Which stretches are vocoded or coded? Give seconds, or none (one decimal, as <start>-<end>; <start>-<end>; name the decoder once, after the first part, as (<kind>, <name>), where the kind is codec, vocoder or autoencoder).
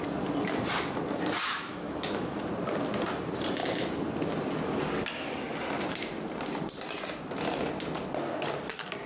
1.5-2.4 (autoencoder, DAC-VAE)